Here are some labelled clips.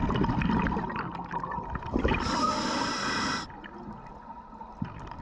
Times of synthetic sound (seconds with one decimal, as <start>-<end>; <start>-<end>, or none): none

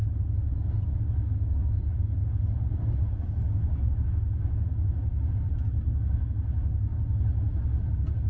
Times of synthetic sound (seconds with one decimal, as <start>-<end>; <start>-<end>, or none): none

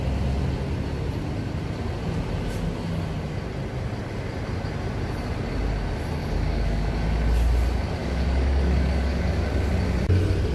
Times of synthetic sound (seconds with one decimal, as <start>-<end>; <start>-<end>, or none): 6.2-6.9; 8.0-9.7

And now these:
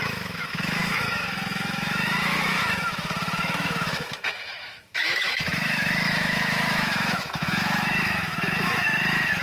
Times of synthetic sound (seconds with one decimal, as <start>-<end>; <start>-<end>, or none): 0.0-9.4

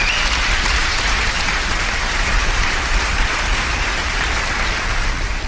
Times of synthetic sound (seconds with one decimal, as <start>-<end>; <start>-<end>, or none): 0.8-4.1